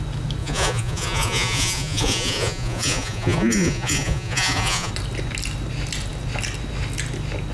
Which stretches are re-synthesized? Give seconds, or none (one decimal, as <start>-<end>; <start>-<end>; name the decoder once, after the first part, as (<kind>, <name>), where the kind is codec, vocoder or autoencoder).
0.4-4.9 (vocoder, Vocos)